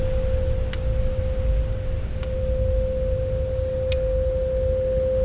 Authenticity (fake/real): real